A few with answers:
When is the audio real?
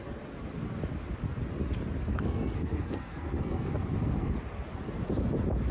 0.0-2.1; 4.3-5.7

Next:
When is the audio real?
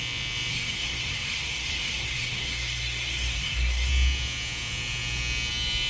0.0-0.5; 3.9-5.9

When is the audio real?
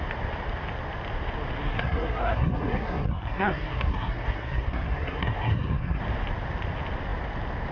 0.0-1.7; 6.0-7.7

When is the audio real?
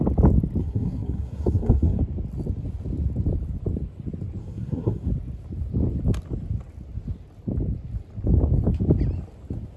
0.0-0.6; 2.0-4.4; 5.1-9.8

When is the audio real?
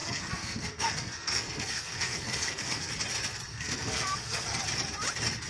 2.9-3.5; 4.6-5.5